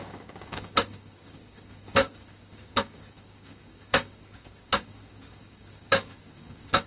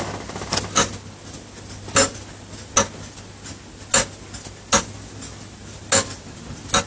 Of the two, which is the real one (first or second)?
second